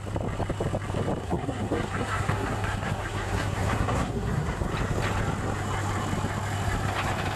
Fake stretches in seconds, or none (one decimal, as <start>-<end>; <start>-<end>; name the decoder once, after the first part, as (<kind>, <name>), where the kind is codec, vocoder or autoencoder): 1.2-4.7 (codec, SNAC)